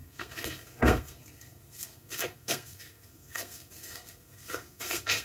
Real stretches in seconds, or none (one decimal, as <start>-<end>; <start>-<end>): none